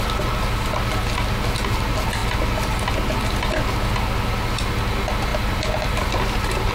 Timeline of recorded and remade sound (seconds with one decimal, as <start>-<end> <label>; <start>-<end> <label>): 0.0-2.2 recorded; 2.2-2.9 remade; 2.9-5.3 recorded; 5.3-6.7 remade

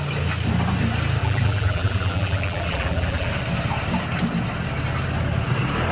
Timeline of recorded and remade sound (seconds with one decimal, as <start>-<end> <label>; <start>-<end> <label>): 0.0-1.2 recorded; 1.2-3.3 remade; 3.3-5.9 recorded

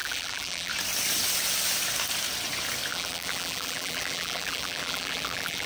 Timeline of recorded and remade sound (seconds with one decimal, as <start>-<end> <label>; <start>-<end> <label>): 0.0-0.7 remade; 0.7-2.9 recorded; 2.9-5.7 remade